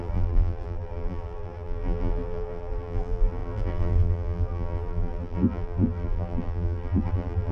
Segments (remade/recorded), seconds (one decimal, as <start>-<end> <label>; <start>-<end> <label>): 0.0-7.5 remade